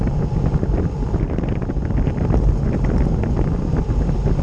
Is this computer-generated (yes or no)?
no